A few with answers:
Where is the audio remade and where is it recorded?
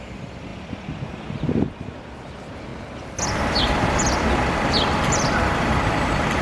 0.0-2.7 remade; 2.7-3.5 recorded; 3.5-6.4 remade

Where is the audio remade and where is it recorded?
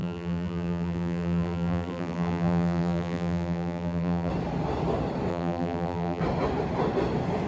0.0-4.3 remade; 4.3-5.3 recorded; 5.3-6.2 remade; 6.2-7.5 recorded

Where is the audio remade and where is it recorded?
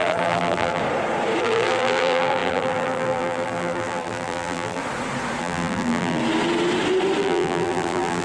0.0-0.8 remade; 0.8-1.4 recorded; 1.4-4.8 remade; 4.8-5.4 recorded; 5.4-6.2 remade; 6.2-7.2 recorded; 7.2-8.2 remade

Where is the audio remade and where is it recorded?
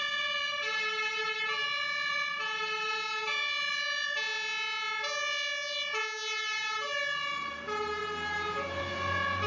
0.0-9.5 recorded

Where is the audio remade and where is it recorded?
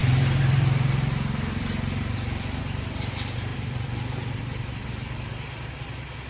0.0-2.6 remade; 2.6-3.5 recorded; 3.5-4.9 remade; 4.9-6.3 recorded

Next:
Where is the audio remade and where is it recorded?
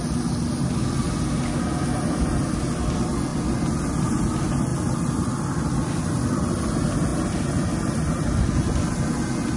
0.0-4.7 recorded; 4.7-6.6 remade; 6.6-7.1 recorded; 7.1-8.5 remade; 8.5-9.6 recorded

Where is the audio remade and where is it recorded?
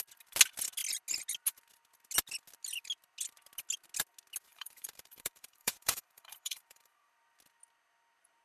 0.0-4.5 recorded; 4.5-7.2 remade; 7.2-8.4 recorded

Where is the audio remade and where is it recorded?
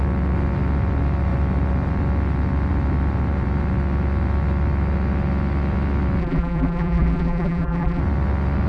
0.0-6.2 recorded; 6.2-8.0 remade; 8.0-8.7 recorded